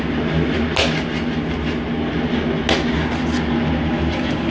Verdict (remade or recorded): recorded